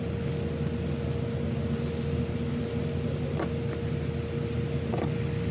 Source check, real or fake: real